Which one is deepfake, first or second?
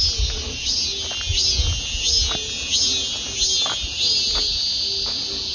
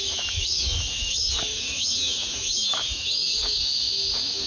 second